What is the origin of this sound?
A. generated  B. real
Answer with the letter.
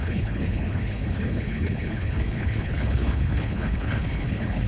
A